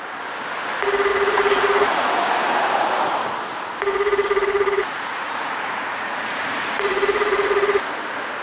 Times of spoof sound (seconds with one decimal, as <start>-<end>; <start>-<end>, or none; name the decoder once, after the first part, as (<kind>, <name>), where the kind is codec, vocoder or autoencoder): 1.1-2.1 (vocoder, Vocos); 3.9-7.8